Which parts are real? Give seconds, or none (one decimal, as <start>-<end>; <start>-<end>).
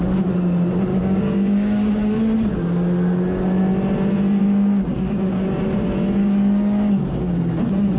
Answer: 0.0-0.9; 2.2-4.4; 5.3-6.2